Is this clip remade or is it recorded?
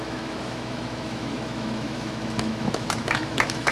remade